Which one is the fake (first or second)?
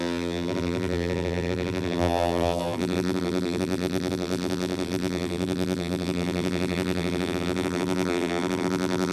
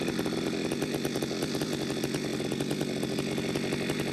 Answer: first